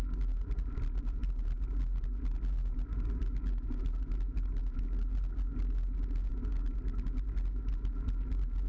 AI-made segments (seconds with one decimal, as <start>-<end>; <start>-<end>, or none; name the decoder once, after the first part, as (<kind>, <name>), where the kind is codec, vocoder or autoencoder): none